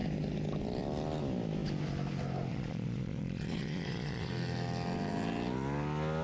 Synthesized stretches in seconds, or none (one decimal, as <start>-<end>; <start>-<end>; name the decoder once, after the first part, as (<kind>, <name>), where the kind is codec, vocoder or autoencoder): 2.5-4.3 (vocoder, Vocos)